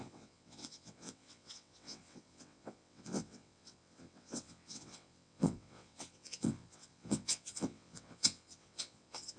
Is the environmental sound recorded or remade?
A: remade